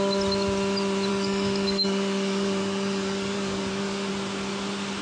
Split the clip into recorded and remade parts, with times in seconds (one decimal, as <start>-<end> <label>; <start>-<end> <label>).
0.0-1.1 recorded; 1.1-4.1 remade; 4.1-5.0 recorded

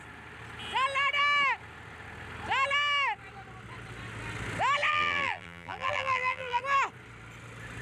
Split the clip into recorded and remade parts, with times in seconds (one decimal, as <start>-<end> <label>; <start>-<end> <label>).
0.0-4.9 recorded; 4.9-6.6 remade; 6.6-7.8 recorded